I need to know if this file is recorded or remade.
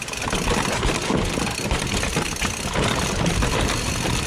recorded